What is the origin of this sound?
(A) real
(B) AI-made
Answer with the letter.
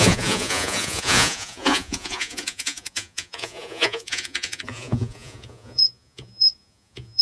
B